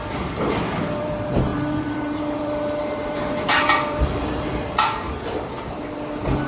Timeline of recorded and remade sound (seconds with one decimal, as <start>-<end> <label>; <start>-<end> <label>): 0.0-0.8 recorded; 0.8-6.5 remade